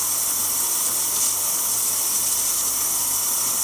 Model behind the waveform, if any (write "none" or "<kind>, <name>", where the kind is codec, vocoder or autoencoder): none